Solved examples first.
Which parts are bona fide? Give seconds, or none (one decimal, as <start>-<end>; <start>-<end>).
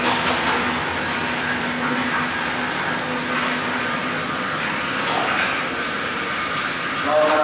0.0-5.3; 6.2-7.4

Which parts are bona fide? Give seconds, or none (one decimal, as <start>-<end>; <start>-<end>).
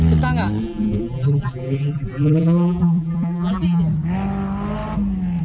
0.0-0.6; 3.8-5.4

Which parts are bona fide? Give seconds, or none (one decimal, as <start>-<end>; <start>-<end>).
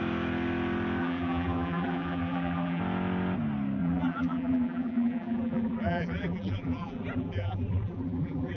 0.0-1.0; 2.8-3.8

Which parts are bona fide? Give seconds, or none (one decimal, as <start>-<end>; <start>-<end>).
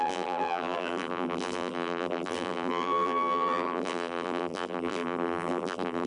none